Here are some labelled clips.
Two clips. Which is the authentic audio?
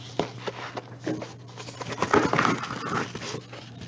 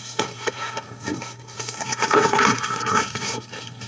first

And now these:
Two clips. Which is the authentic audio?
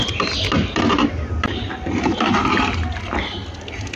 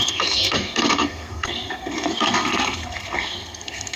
first